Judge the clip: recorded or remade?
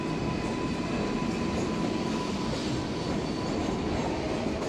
recorded